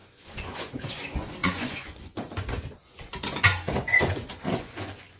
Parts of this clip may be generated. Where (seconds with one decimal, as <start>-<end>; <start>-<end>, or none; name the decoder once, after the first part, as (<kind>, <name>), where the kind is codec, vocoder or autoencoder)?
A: 0.0-5.2 (vocoder, Vocos)